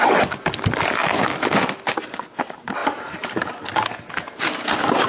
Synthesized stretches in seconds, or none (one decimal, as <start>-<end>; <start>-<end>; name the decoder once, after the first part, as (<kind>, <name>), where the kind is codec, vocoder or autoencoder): none